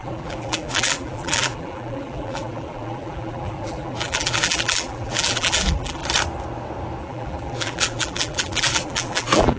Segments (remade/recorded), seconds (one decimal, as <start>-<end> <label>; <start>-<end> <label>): 0.0-6.0 remade; 6.0-7.0 recorded; 7.0-9.6 remade